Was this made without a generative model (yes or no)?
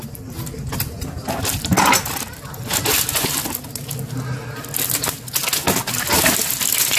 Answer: yes